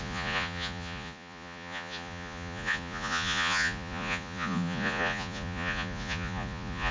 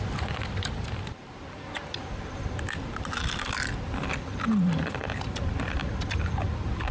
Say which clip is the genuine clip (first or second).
second